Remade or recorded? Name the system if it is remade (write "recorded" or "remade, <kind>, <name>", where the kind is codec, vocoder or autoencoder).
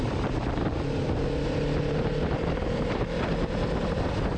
remade, vocoder, BigVGAN v2